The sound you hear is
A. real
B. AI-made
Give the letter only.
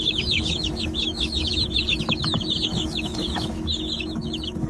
B